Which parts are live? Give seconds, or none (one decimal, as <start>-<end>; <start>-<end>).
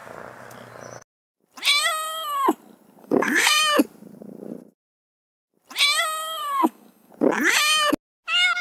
0.0-3.0; 3.6-6.4; 7.1-8.6